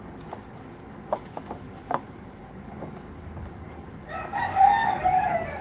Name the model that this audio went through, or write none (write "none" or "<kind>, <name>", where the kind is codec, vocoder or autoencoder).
codec, DAC